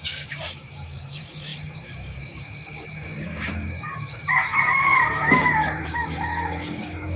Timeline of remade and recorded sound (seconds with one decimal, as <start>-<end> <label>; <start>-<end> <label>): 0.0-7.2 remade